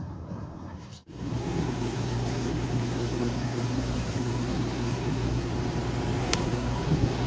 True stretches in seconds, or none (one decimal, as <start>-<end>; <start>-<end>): 5.5-6.2